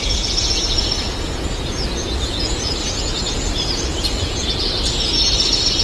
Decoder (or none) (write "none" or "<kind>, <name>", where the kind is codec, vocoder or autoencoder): vocoder, Vocos